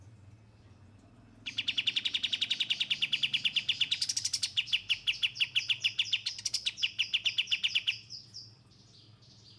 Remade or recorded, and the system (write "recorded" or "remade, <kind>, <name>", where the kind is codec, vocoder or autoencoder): recorded